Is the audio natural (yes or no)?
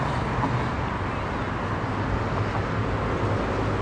yes